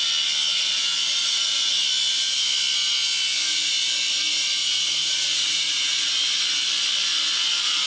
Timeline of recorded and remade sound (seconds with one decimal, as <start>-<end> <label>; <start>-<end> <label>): 0.0-0.5 recorded; 0.5-1.7 remade; 1.7-4.6 recorded; 4.6-6.1 remade; 6.1-7.9 recorded